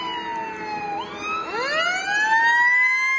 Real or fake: real